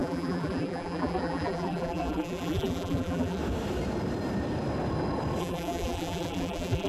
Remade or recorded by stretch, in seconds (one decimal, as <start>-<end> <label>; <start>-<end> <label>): 0.0-3.4 remade; 3.4-5.4 recorded; 5.4-6.9 remade